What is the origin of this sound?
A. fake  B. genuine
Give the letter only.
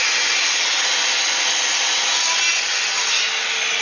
B